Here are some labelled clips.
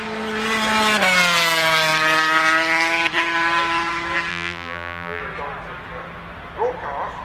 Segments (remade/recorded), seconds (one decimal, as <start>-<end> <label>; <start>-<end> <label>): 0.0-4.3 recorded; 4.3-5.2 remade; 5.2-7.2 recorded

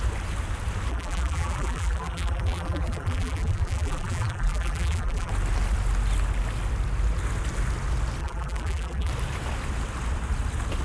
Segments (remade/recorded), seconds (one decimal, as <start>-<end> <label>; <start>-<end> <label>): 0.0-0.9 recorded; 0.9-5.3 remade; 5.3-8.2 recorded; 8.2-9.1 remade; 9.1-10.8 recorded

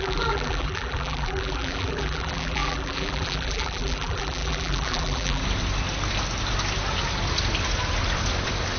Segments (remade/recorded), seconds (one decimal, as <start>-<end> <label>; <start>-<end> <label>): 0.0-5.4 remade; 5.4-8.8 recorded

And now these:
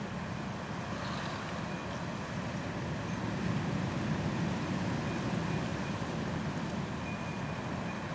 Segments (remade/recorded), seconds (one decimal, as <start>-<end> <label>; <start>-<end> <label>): 0.0-5.7 recorded; 5.7-6.9 remade; 6.9-8.1 recorded

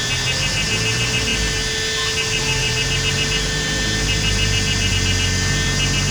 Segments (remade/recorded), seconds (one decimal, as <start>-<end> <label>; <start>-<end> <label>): 0.0-6.1 recorded

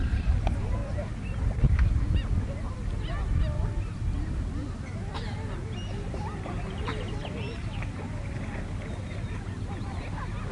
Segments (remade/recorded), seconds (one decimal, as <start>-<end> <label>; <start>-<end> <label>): 0.0-10.5 recorded